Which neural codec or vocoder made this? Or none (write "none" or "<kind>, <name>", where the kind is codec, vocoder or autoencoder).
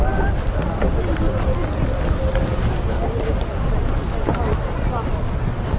none